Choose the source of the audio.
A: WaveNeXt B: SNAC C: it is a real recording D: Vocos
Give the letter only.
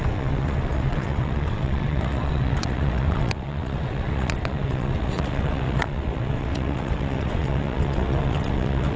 A